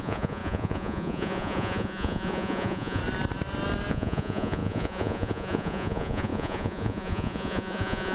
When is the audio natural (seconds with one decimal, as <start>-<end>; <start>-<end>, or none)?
3.0-3.9

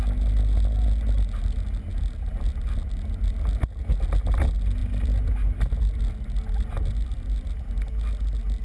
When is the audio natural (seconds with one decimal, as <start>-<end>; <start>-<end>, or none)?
0.0-8.6

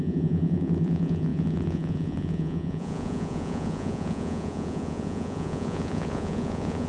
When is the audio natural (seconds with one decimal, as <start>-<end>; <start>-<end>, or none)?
none

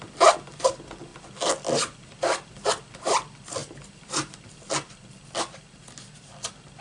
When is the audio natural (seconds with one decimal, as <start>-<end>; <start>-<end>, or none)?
0.0-6.8

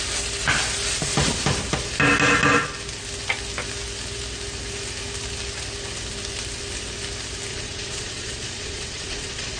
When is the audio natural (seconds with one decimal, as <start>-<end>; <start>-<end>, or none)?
0.0-7.5

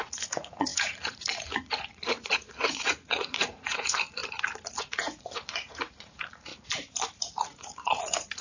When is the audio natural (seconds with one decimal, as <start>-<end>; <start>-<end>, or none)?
4.2-4.8; 6.5-7.2

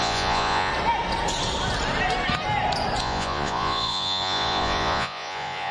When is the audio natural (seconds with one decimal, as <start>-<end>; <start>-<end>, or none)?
0.7-3.0